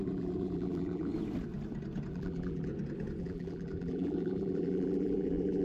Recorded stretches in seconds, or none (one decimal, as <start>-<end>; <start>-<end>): 1.1-2.1; 2.7-3.2